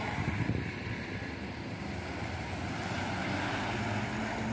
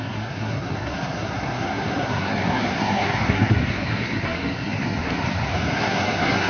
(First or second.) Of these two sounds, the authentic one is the first